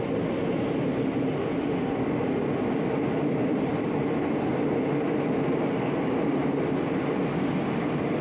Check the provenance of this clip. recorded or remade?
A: recorded